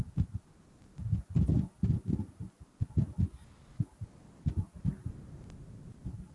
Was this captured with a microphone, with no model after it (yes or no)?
yes